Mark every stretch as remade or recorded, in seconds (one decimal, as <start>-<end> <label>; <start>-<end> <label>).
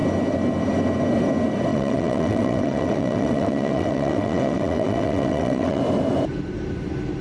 0.0-1.7 recorded; 1.7-5.8 remade; 5.8-7.2 recorded